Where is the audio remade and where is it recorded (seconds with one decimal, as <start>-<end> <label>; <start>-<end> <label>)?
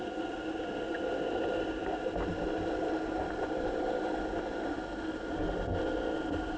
0.0-6.6 recorded